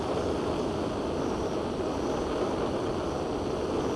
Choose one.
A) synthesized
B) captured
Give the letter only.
B